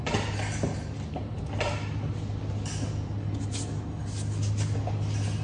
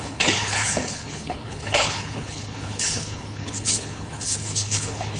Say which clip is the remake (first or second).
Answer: second